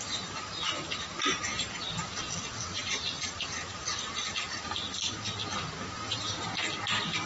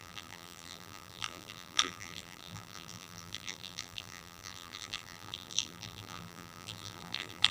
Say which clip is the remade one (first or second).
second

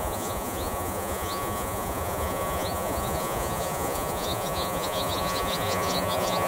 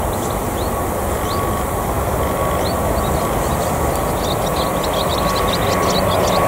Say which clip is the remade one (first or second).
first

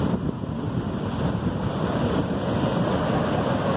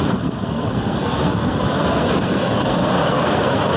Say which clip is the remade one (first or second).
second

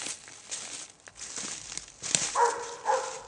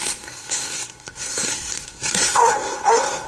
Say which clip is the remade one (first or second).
second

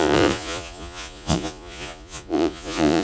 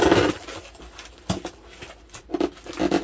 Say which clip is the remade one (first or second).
first